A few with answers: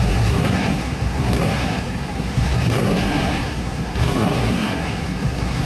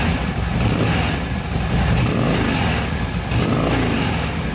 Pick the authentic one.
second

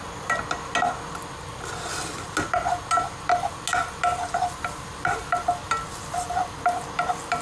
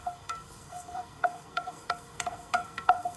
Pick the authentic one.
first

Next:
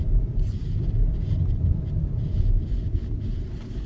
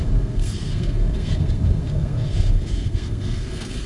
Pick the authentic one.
first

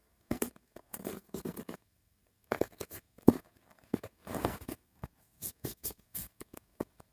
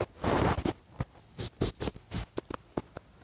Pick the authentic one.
second